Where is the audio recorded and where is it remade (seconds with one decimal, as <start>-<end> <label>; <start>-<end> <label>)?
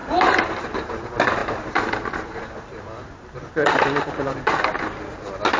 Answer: 0.0-0.9 remade; 0.9-1.4 recorded; 1.4-4.7 remade; 4.7-5.6 recorded